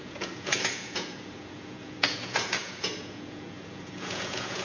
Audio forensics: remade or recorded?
remade